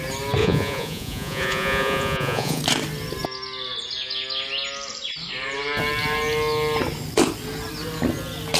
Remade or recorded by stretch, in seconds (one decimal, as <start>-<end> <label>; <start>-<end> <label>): 0.0-0.4 recorded; 0.4-2.6 remade; 2.6-8.6 recorded